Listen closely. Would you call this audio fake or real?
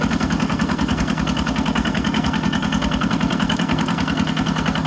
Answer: fake